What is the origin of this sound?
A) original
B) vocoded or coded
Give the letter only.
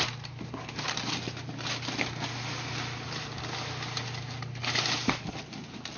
A